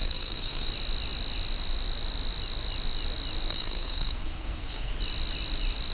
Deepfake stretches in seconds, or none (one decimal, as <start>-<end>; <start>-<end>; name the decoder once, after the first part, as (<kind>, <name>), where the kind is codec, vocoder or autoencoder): 0.0-0.7 (codec, SNAC); 3.5-4.9

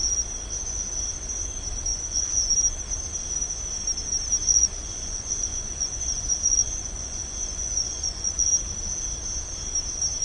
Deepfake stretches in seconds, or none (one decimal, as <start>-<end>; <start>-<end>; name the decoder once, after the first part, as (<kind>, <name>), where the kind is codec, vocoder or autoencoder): 1.9-2.5 (vocoder, Vocos); 4.4-8.5

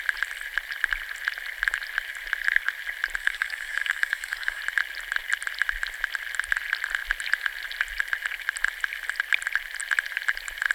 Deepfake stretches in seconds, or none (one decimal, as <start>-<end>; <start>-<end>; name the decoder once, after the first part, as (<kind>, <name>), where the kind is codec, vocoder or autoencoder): 3.2-4.6 (codec, DAC)

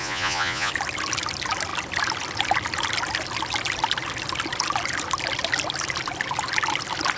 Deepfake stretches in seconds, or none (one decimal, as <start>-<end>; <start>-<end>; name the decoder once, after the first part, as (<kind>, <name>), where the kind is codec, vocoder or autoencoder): 0.0-0.7 (vocoder, Vocos)

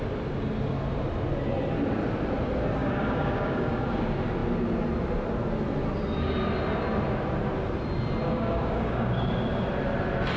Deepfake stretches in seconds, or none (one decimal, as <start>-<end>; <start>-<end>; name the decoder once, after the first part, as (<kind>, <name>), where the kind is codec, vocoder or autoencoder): 2.8-3.8 (codec, DAC); 8.3-9.1